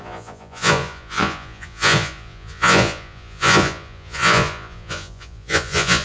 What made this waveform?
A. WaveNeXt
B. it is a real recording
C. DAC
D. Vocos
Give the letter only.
D